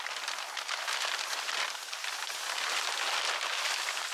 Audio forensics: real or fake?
real